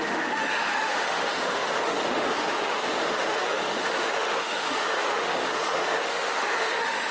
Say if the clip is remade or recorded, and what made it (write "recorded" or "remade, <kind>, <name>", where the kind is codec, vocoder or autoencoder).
remade, autoencoder, DAC-VAE